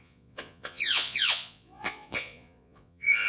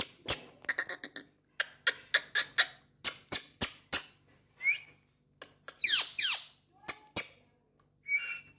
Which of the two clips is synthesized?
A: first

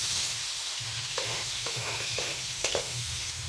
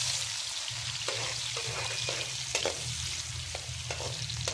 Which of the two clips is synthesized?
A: first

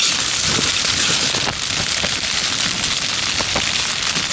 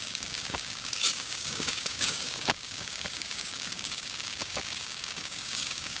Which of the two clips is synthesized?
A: second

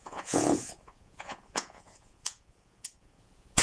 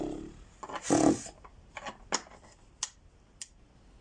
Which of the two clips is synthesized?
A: first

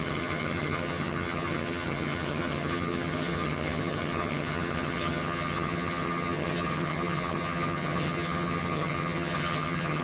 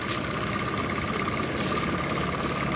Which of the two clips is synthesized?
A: first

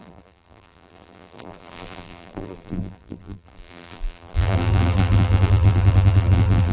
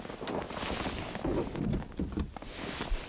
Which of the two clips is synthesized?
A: first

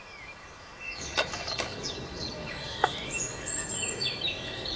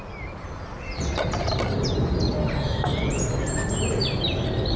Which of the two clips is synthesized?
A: first